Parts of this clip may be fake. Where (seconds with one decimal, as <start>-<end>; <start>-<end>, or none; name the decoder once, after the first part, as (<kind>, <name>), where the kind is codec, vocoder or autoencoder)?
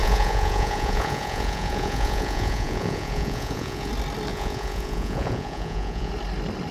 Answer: 0.0-3.9 (vocoder, Vocos); 4.3-6.1